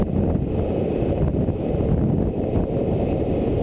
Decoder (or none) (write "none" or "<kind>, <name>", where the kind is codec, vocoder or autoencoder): none